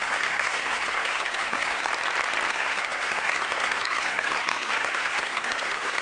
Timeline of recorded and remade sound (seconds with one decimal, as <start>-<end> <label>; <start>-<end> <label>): 0.0-1.9 remade; 1.9-2.5 recorded; 2.5-6.0 remade